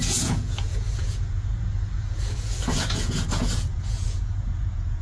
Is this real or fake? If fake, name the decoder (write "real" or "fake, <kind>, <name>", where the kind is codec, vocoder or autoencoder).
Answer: fake, vocoder, Vocos